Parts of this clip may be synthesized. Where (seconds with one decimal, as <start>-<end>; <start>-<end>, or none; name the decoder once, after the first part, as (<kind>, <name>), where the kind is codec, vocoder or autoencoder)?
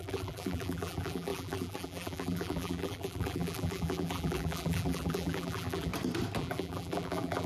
0.0-5.9 (vocoder, BigVGAN v2); 6.4-7.5